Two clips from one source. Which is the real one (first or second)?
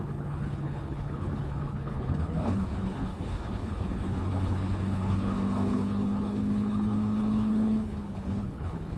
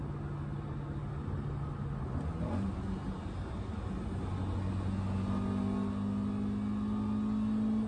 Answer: second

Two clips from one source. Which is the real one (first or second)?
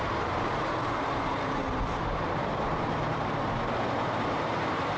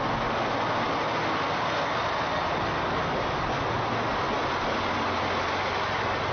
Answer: second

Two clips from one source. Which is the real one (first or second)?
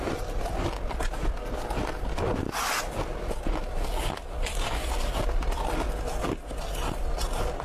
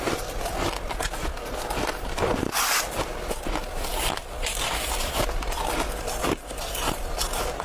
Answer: first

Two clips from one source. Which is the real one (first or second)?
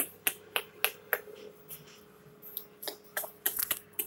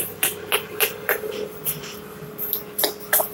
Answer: first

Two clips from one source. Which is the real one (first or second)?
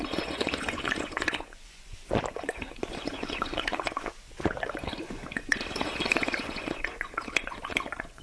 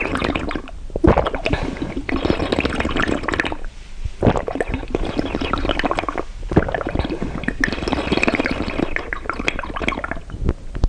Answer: second